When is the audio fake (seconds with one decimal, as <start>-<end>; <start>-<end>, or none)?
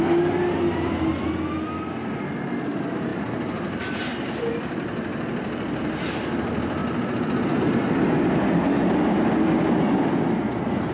none